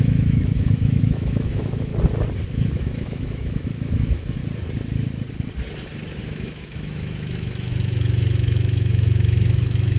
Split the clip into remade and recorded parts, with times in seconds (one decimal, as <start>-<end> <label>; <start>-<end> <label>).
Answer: 0.0-1.9 remade; 1.9-2.5 recorded; 2.5-4.4 remade; 4.4-6.2 recorded; 6.2-10.0 remade